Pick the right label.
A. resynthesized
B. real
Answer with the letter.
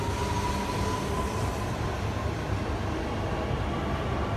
B